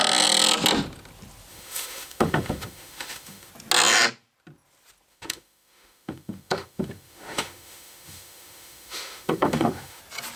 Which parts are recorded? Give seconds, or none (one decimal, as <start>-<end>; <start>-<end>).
0.0-1.5; 3.5-5.1; 10.0-10.4